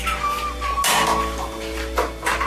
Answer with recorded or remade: recorded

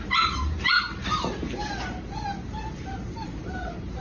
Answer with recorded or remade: remade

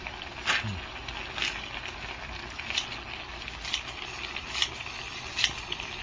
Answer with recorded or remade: recorded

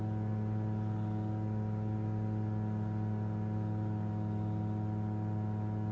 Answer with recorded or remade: recorded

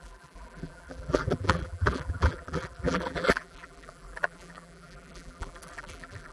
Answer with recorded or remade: remade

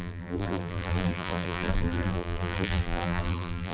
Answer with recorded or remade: remade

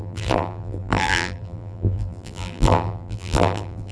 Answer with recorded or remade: remade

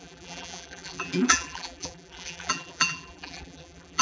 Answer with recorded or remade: remade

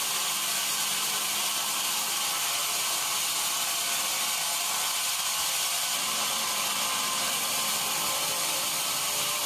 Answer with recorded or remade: remade